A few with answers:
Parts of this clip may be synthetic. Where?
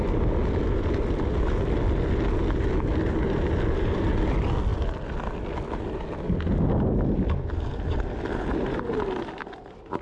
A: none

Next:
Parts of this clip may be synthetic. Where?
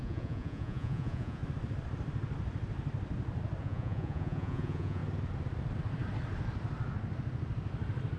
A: 0.0-1.4 (vocoder, Vocos); 3.6-5.0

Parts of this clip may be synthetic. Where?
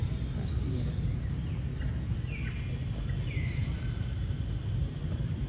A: none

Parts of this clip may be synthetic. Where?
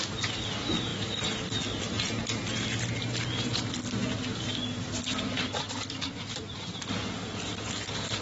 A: none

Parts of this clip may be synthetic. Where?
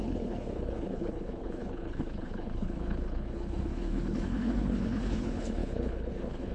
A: 0.0-6.5 (codec, HILCodec)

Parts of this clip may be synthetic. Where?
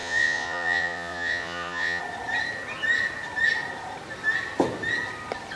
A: 0.0-2.0 (vocoder, Vocos)